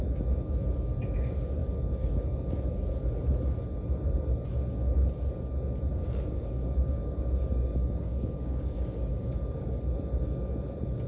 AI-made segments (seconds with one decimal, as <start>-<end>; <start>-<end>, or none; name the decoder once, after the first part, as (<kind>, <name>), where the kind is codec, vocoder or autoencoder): 5.9-9.8 (codec, DAC)

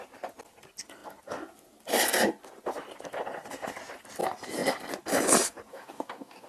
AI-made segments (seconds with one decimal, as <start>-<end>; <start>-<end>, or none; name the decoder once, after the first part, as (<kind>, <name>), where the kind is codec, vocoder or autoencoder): 5.7-6.5 (codec, DAC)

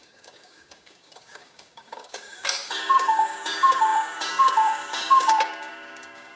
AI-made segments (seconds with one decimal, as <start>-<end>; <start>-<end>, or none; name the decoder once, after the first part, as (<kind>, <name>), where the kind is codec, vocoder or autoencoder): 0.0-6.4 (codec, DAC)